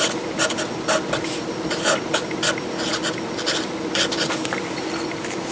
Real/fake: real